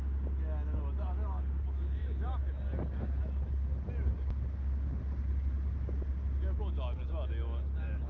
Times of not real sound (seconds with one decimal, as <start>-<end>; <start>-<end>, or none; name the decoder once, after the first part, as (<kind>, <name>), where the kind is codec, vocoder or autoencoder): none